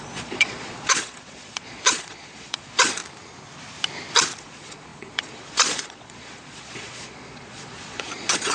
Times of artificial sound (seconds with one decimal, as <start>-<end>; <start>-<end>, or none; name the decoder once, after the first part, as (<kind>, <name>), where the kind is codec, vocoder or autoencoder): 0.0-3.0 (vocoder, Vocos); 4.4-8.5